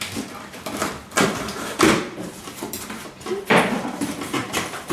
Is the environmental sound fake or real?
fake